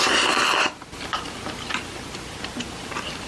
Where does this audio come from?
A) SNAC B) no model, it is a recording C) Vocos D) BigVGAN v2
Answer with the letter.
B